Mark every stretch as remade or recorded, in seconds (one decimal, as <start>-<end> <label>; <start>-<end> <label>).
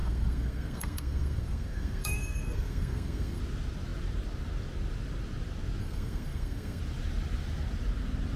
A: 0.0-3.4 remade; 3.4-5.8 recorded; 5.8-6.8 remade; 6.8-8.4 recorded